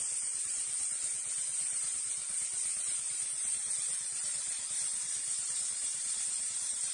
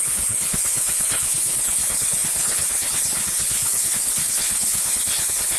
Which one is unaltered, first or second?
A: first